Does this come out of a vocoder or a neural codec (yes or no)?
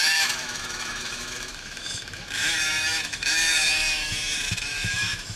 yes